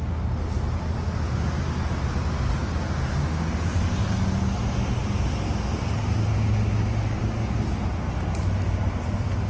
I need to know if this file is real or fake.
real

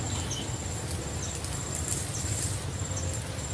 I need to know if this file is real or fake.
real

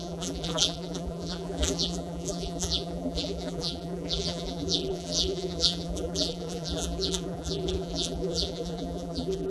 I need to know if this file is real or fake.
fake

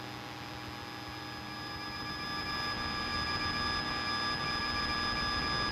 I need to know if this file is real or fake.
real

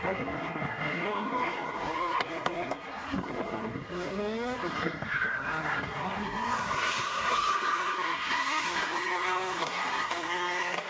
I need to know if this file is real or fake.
fake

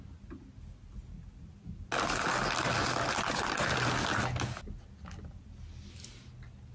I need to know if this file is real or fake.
real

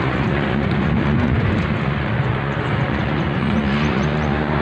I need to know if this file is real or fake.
fake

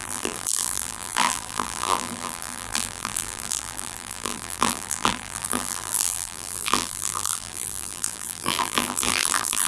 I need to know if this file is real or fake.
fake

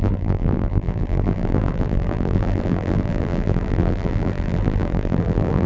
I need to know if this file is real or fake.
fake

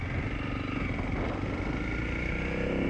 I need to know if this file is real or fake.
real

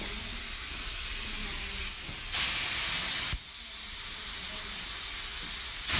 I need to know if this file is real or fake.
real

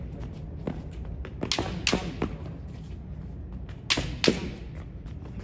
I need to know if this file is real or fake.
real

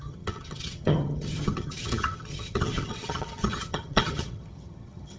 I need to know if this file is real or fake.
fake